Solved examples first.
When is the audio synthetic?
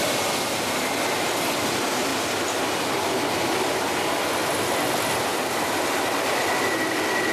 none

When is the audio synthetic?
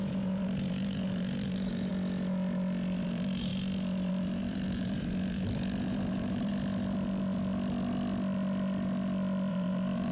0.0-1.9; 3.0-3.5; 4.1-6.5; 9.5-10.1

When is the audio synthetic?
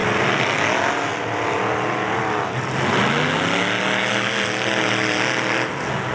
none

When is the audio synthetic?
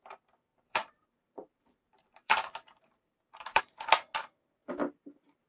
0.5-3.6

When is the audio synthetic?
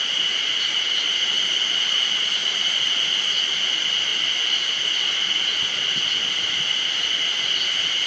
none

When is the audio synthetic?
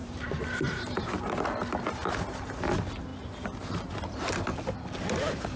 0.0-1.3; 3.1-3.9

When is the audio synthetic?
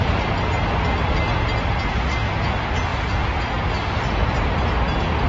none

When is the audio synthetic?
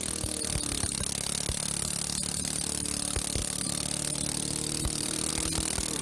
3.4-5.3